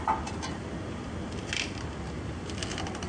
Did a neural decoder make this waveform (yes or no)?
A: no